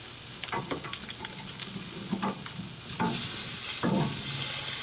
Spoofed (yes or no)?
no